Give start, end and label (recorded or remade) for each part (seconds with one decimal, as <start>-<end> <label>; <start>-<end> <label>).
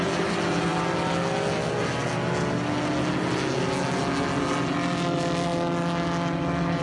0.0-6.8 recorded